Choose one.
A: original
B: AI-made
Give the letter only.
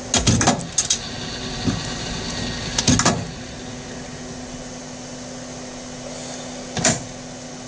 A